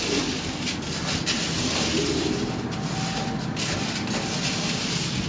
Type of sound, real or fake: real